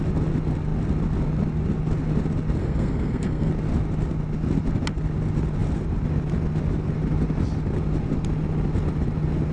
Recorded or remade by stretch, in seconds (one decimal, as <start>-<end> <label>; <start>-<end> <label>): 0.0-2.6 recorded; 2.6-3.5 remade; 3.5-9.5 recorded